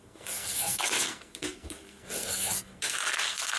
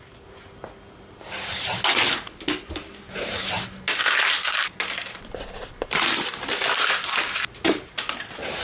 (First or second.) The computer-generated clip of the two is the first